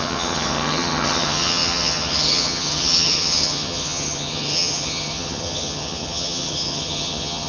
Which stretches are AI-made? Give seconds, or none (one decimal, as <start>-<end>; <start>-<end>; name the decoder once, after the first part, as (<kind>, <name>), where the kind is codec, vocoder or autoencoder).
0.0-7.5 (vocoder, HiFi-GAN)